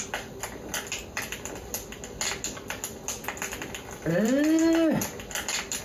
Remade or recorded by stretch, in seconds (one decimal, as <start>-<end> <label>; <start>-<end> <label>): 0.0-5.8 recorded